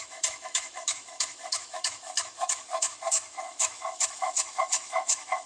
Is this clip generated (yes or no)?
yes